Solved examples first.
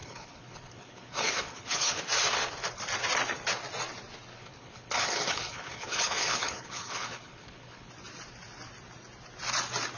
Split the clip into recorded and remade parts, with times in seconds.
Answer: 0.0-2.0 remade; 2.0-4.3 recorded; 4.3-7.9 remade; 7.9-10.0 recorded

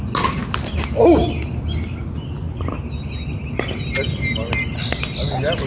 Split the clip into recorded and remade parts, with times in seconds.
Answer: 0.0-5.7 recorded

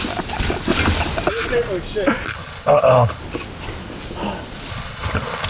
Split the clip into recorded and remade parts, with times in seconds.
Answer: 0.0-2.3 recorded; 2.3-3.2 remade; 3.2-4.7 recorded; 4.7-5.5 remade

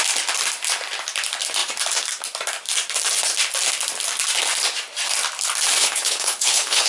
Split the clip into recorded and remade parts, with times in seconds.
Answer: 0.0-5.8 recorded; 5.8-6.9 remade